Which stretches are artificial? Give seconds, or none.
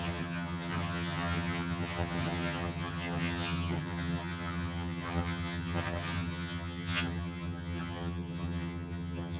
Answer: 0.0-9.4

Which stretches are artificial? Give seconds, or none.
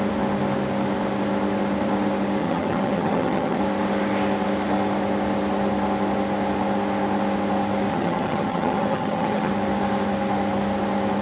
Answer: 2.4-3.6; 7.9-9.5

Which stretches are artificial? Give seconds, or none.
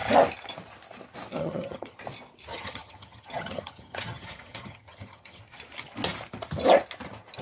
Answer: 1.4-2.0; 2.5-5.4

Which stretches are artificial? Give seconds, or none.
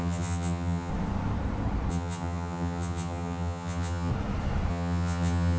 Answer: 0.0-0.9; 1.9-4.1; 4.7-5.6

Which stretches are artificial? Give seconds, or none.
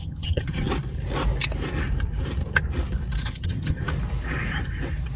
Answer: 0.0-0.7; 3.2-3.8